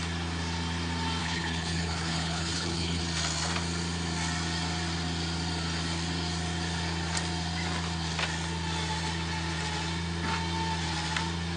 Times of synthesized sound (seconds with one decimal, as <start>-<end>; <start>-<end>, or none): 1.2-3.0

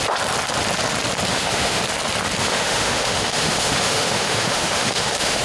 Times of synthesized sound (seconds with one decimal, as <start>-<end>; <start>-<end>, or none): 1.3-1.8; 2.4-5.4

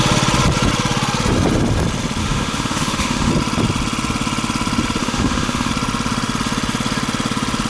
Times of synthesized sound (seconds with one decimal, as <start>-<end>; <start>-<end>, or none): 2.2-3.3; 5.0-5.7

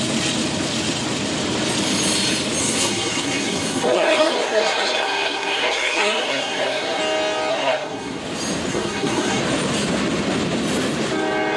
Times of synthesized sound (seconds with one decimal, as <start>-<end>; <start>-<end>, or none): 2.6-7.0; 7.5-8.2; 8.7-9.4

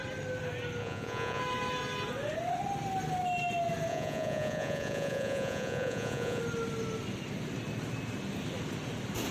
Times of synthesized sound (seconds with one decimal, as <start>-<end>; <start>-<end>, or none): 0.8-1.4; 3.9-6.4

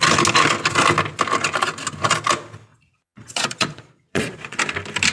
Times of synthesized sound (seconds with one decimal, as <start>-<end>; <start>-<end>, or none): 2.7-4.6